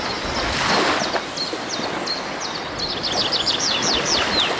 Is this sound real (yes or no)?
yes